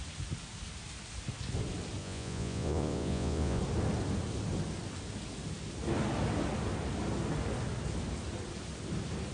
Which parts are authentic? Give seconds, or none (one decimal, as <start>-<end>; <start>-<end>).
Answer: 0.0-2.0; 3.6-9.3